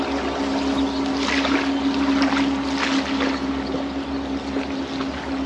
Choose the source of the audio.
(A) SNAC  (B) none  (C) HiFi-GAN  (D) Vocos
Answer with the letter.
B